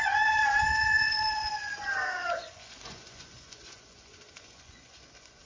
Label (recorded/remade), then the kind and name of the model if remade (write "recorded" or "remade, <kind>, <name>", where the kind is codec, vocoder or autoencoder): remade, vocoder, Vocos